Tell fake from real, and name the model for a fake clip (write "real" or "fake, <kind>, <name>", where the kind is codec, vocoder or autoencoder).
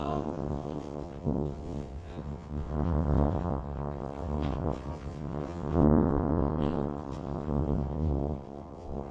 fake, vocoder, WaveNeXt